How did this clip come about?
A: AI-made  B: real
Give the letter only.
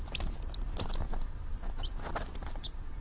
B